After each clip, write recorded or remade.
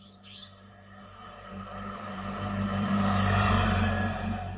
remade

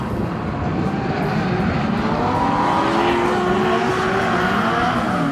recorded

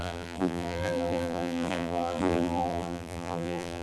remade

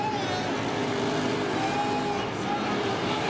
recorded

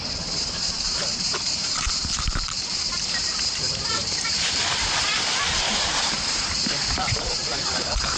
remade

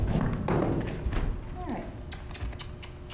recorded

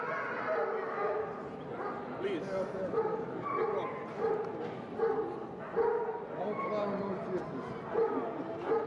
recorded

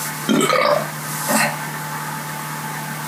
recorded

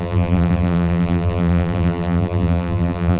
remade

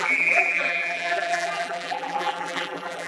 remade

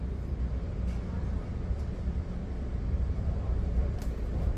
remade